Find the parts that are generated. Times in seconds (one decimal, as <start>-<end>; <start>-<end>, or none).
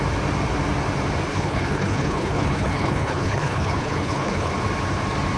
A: 1.3-4.5